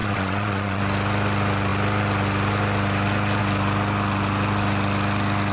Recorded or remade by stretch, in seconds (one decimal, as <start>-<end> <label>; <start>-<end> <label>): 0.0-0.8 remade; 0.8-5.5 recorded